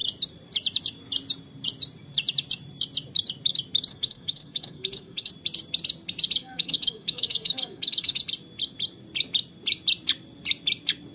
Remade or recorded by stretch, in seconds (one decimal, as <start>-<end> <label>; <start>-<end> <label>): 0.0-3.9 recorded; 3.9-5.3 remade; 5.3-6.4 recorded; 6.4-8.2 remade; 8.2-11.1 recorded